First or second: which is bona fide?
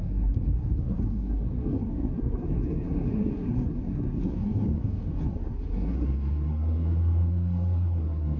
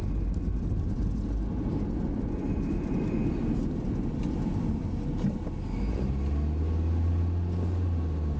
second